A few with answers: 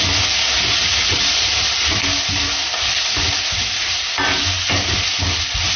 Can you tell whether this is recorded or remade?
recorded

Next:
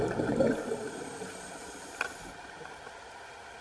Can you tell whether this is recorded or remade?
recorded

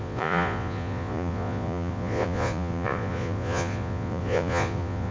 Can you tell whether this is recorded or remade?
remade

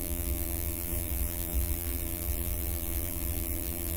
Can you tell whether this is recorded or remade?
remade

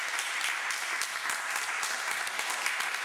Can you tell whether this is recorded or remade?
recorded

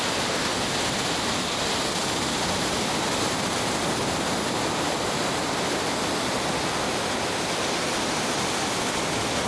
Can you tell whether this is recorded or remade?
recorded